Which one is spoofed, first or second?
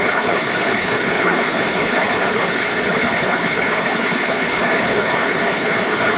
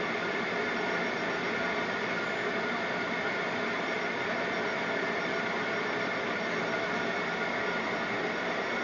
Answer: first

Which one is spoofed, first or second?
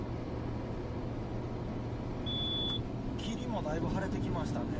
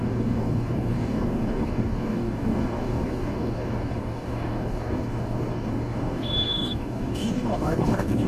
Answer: second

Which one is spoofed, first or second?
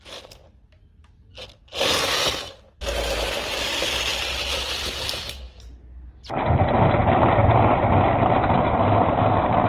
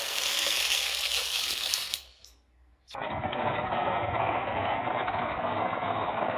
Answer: second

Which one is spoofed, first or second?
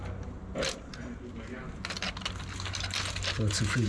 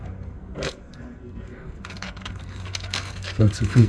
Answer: second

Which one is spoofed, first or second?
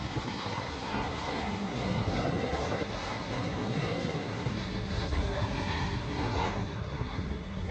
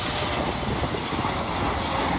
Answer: first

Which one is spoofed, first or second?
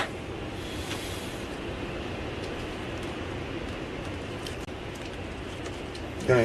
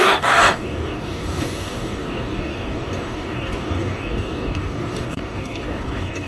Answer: second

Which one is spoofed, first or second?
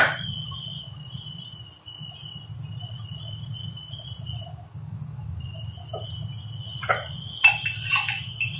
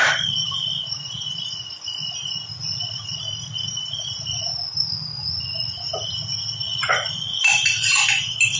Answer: second